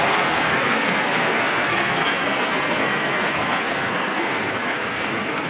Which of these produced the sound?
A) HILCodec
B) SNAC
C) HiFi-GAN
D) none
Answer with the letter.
B